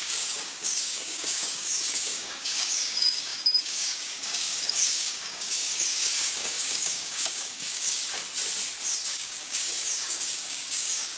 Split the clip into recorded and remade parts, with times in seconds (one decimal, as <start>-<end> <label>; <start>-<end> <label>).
0.0-8.0 remade; 8.0-9.1 recorded; 9.1-11.2 remade